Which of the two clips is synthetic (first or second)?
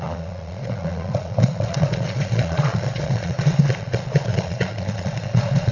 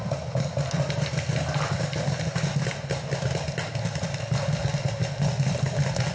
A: first